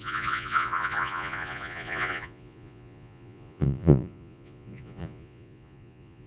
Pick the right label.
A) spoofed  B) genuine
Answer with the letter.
A